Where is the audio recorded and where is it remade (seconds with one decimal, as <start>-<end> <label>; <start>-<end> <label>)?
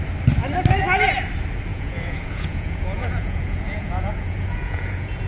0.0-1.7 recorded; 1.7-5.3 remade